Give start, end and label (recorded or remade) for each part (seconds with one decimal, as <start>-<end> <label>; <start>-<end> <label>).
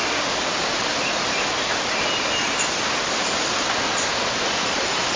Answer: 0.0-5.2 recorded